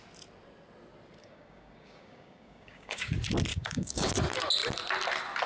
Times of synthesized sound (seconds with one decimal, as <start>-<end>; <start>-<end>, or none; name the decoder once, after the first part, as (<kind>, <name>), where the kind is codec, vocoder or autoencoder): 1.2-3.1 (codec, DAC); 3.5-4.1